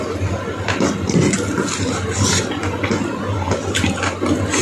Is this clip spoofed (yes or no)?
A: no